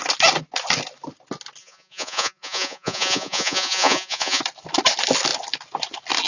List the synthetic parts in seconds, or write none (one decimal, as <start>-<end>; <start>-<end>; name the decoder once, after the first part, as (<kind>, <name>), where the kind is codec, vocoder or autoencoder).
1.6-4.4 (vocoder, Vocos)